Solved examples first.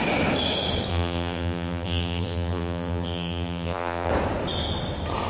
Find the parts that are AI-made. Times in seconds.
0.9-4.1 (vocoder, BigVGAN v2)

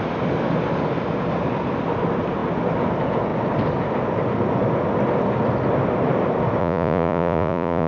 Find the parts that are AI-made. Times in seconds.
6.6-7.9 (vocoder, Vocos)

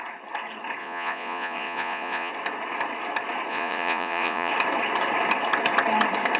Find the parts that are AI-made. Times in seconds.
0.8-2.3 (vocoder, Vocos); 3.5-4.5